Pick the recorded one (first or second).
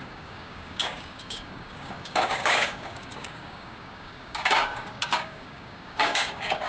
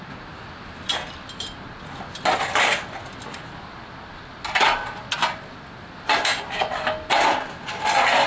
second